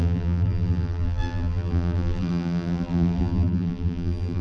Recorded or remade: remade